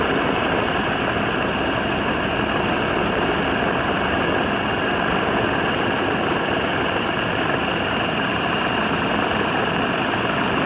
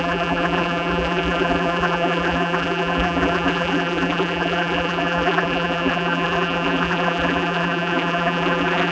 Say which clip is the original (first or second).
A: first